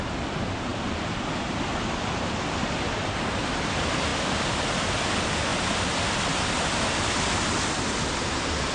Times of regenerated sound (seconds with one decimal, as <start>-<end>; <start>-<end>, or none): none